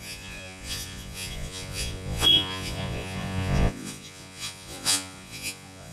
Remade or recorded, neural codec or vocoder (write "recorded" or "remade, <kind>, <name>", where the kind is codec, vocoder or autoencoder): remade, vocoder, Vocos